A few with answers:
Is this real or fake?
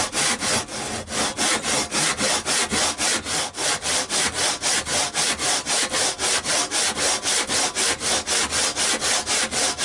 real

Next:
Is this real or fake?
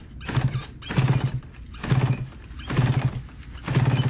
real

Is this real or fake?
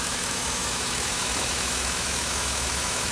fake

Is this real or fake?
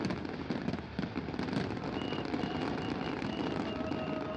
real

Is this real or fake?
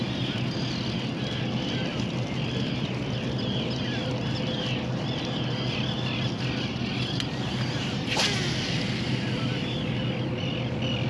real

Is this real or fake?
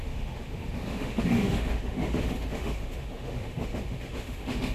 fake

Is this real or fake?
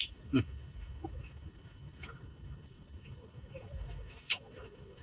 fake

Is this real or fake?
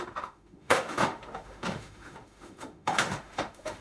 fake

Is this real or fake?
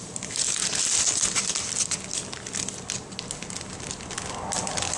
real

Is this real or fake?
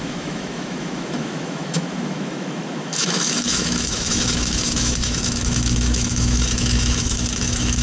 fake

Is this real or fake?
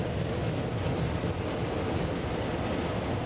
real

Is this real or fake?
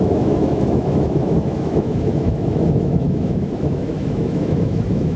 fake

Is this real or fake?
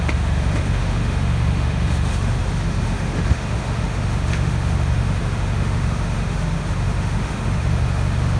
fake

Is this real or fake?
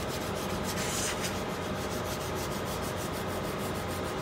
real